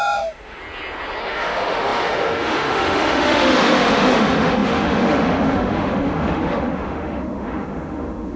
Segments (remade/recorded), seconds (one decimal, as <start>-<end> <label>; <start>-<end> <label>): 0.0-0.6 remade; 0.6-1.2 recorded; 1.2-8.4 remade